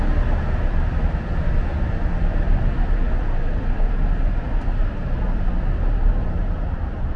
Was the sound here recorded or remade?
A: recorded